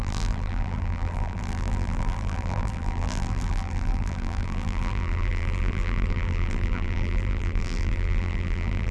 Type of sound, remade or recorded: remade